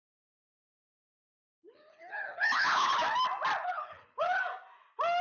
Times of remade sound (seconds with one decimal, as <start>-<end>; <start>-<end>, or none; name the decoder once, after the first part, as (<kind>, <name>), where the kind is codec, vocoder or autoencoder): 1.0-2.9 (codec, HILCodec); 3.6-4.4